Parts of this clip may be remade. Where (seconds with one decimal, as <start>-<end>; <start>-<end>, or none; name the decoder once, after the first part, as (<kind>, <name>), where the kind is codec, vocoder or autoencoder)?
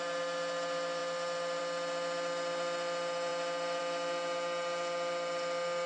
none